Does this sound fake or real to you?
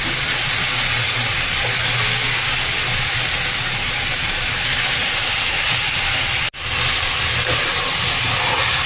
real